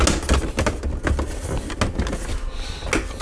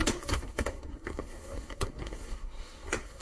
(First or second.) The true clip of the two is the first